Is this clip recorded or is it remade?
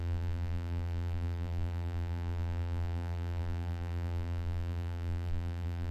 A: remade